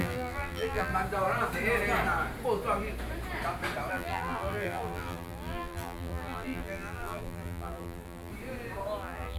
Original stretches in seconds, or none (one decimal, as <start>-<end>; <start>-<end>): 0.9-3.9; 8.3-9.0